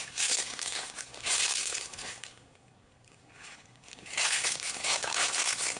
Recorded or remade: remade